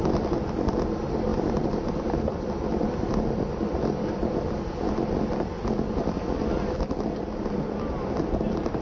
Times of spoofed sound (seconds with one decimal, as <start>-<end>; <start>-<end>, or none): 1.3-2.1